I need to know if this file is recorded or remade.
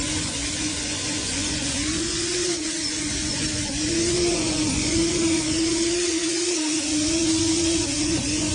remade